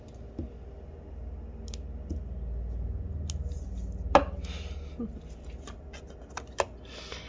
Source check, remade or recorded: recorded